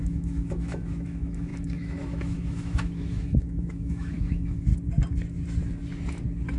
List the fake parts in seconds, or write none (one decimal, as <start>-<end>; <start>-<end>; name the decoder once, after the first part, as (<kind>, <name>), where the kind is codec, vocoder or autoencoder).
0.0-4.7 (autoencoder, DAC-VAE)